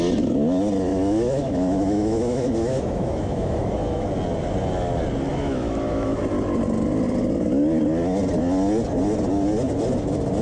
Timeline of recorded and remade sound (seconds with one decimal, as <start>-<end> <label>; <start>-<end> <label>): 0.0-0.9 recorded; 0.9-4.1 remade; 4.1-5.3 recorded; 5.3-6.2 remade; 6.2-10.4 recorded